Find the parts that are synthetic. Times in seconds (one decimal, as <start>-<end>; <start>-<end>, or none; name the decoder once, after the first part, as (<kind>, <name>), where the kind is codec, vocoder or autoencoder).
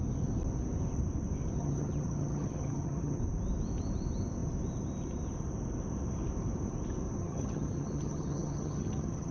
1.6-3.2 (vocoder, HiFi-GAN); 7.2-9.3